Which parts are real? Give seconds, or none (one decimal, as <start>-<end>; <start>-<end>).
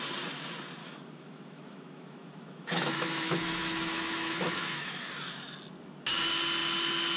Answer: 0.0-0.8; 5.1-7.2